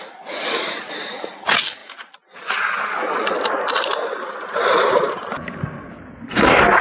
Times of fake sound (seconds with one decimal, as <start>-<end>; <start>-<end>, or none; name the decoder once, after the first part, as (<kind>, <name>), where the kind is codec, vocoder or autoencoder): none